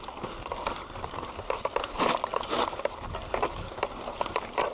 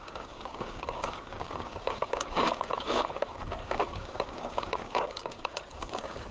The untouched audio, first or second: first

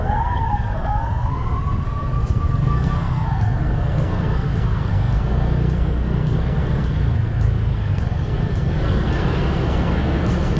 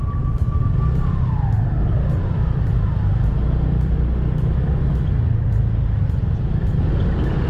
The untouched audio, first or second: second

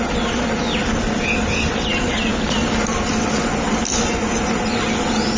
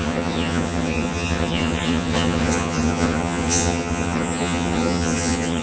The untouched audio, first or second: first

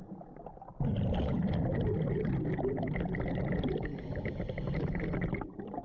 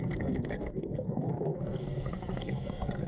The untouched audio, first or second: first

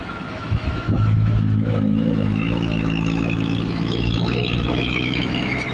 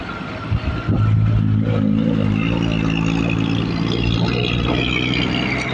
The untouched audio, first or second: second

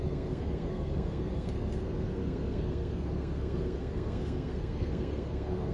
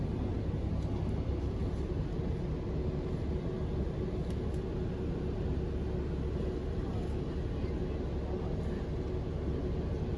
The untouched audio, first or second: second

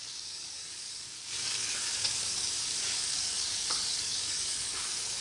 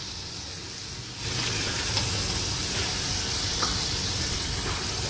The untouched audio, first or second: second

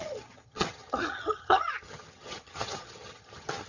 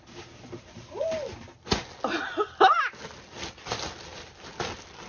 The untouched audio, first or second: second